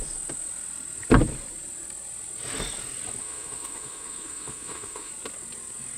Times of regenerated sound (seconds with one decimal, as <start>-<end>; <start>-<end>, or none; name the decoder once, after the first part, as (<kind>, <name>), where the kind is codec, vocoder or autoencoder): 3.2-5.1 (autoencoder, DAC-VAE)